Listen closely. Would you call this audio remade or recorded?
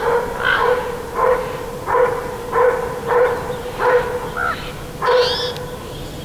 recorded